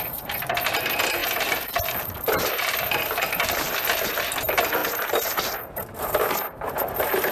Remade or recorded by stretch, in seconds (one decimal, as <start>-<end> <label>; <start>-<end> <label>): 0.0-7.3 remade